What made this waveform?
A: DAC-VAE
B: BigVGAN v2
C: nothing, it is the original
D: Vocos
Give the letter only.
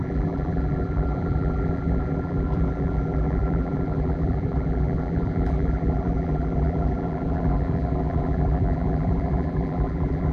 B